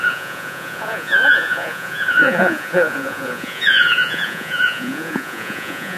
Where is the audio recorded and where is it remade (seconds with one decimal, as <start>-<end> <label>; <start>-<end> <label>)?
0.0-6.0 remade